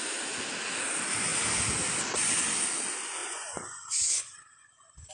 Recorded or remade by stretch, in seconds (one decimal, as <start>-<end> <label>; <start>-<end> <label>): 0.0-3.2 recorded; 3.2-5.1 remade